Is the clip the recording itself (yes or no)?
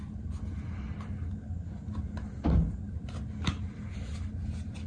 yes